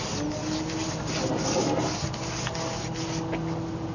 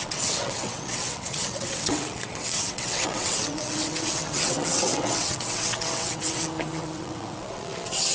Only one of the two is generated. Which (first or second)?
second